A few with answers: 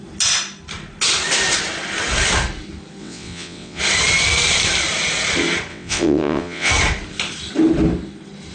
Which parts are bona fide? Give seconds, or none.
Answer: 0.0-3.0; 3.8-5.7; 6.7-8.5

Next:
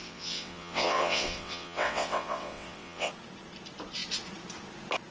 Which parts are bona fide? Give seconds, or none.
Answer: 3.1-5.1

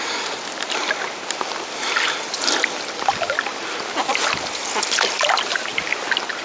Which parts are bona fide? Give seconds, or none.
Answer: 0.0-6.4

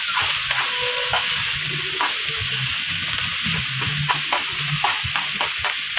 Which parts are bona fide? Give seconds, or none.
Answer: 0.0-6.0

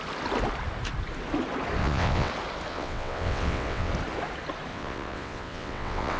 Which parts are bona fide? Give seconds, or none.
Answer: 0.0-1.8; 2.3-2.7; 3.9-4.7

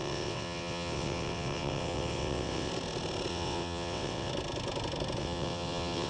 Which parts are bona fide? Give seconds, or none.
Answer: 2.7-3.3; 4.3-5.2

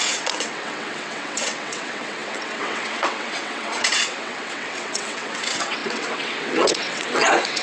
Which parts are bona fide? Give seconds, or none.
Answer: none